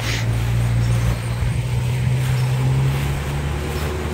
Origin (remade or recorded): recorded